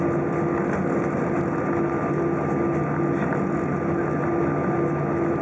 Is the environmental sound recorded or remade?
recorded